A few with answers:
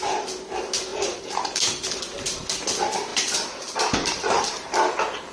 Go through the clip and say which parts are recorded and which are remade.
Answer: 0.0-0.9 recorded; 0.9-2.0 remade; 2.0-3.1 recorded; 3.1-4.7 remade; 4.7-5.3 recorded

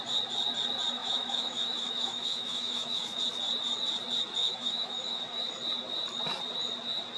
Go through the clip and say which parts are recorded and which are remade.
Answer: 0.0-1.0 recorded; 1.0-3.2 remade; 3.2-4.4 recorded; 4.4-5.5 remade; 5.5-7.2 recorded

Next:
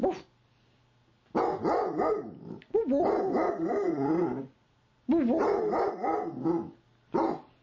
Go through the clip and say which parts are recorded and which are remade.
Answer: 0.0-7.6 recorded

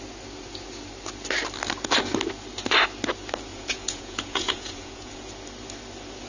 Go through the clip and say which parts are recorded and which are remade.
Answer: 0.0-3.5 recorded; 3.5-5.3 remade; 5.3-6.3 recorded

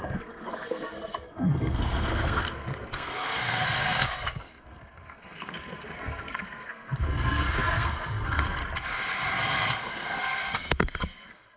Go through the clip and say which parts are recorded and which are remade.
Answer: 0.0-8.6 remade; 8.6-9.3 recorded; 9.3-11.6 remade

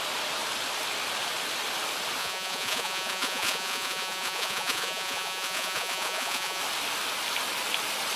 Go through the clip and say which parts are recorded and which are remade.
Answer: 0.0-2.2 recorded; 2.2-6.6 remade; 6.6-8.2 recorded

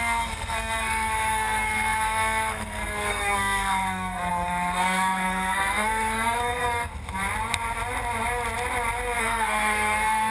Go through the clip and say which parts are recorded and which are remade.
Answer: 0.0-6.9 remade; 6.9-9.2 recorded; 9.2-10.3 remade